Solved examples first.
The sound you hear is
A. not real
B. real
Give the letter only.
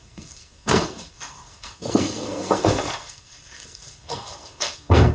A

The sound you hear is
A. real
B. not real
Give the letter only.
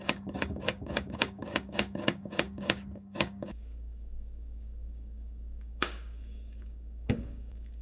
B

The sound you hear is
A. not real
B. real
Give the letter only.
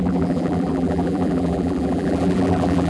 A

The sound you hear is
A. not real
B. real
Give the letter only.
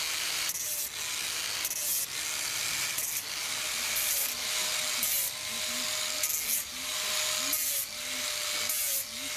B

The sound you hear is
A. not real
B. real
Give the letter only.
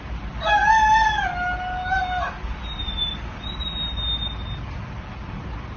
B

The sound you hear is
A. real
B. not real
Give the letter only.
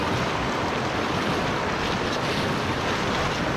A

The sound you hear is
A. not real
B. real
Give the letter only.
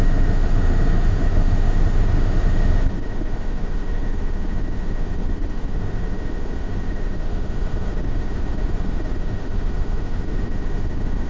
A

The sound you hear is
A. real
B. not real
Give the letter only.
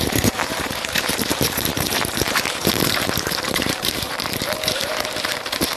B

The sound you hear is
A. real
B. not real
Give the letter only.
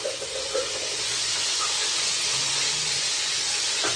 B